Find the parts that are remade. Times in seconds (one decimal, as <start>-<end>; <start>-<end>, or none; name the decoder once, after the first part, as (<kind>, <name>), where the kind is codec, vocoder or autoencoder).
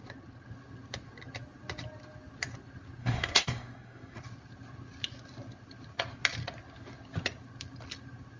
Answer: 3.0-4.2 (codec, SNAC)